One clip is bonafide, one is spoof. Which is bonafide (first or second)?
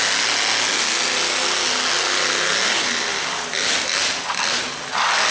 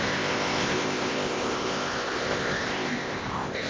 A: first